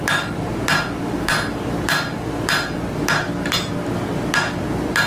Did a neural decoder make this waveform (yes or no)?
no